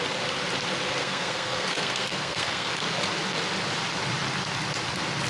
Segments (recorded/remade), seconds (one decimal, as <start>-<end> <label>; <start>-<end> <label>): 0.0-1.0 recorded; 1.0-2.7 remade; 2.7-5.3 recorded